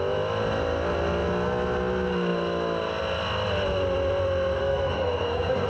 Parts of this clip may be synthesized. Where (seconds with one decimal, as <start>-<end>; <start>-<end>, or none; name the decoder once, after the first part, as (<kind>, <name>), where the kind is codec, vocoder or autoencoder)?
4.6-5.7 (codec, SNAC)